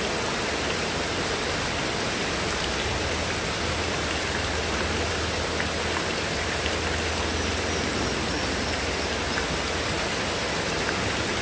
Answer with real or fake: real